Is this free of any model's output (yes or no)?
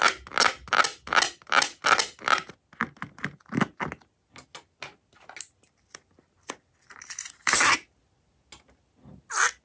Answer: yes